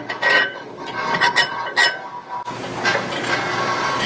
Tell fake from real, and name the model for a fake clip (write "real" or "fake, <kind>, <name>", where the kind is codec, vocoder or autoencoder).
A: real